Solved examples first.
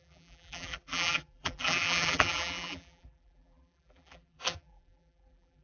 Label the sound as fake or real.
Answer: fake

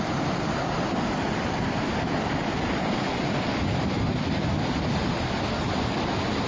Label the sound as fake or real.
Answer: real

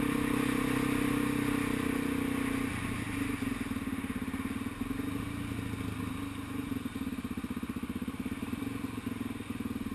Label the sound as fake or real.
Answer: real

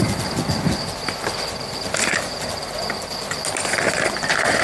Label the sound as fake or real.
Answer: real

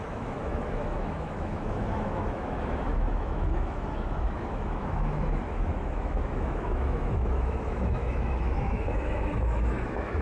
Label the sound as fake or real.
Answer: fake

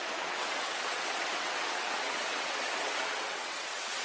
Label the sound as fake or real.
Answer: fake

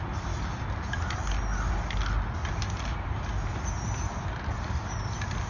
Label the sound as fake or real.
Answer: real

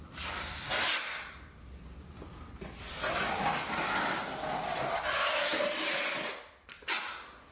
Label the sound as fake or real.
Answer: real